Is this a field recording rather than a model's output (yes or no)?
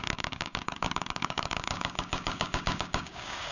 no